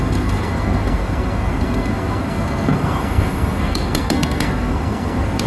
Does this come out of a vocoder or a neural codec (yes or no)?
yes